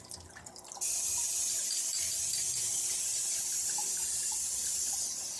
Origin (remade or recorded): recorded